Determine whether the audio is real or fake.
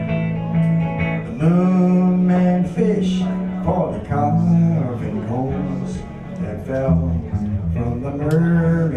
real